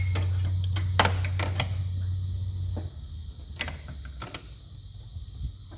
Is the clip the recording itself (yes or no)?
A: yes